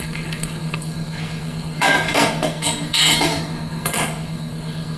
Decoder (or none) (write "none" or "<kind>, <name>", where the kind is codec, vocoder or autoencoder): codec, SNAC